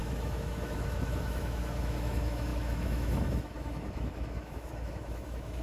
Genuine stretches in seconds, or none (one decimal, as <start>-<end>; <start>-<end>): none